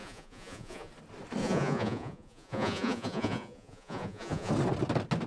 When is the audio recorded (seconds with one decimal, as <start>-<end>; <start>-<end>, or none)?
0.9-1.4; 4.5-5.3